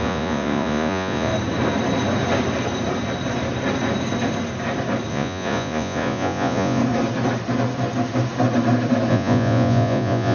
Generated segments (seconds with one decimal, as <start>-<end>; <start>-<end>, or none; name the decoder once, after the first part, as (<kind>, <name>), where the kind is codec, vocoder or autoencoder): 0.0-1.3 (vocoder, Vocos); 5.1-6.8; 9.1-10.3

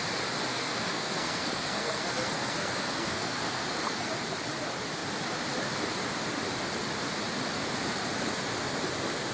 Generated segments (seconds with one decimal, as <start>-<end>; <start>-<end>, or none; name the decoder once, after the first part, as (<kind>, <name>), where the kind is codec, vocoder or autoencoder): 0.5-4.1 (codec, SNAC)

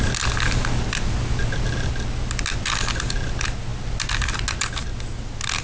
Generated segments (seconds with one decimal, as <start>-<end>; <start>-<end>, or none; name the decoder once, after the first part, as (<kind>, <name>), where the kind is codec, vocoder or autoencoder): none

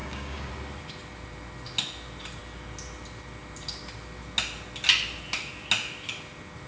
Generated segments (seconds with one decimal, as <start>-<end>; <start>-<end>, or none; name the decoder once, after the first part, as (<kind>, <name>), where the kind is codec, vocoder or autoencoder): 0.0-0.5 (codec, DAC)

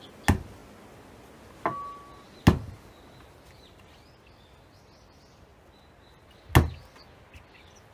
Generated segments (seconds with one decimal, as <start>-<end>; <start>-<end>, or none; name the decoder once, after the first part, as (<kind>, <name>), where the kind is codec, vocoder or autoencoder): none

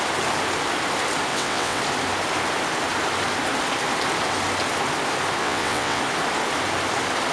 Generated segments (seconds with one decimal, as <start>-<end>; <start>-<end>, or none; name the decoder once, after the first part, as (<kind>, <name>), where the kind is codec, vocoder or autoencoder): 1.3-1.8 (vocoder, WaveNeXt); 5.4-6.0

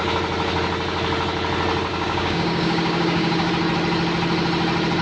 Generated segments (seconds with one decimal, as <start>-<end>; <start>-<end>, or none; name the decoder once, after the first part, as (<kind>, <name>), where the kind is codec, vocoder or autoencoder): 1.9-3.5 (codec, DAC)

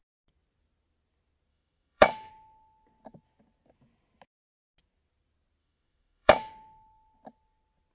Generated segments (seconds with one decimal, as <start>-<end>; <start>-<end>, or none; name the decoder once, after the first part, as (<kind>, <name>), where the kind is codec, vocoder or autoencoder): 1.5-2.3 (autoencoder, DAC-VAE); 5.6-6.5